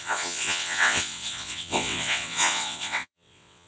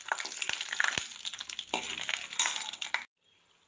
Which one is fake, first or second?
first